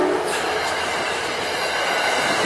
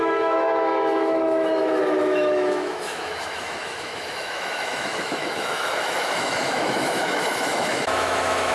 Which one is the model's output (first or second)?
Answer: second